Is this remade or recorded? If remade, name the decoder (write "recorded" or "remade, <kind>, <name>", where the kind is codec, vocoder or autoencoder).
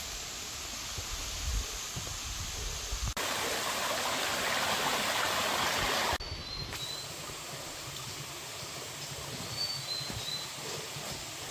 recorded